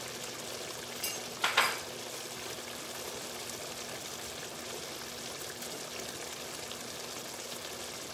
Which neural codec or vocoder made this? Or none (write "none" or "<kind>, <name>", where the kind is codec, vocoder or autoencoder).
none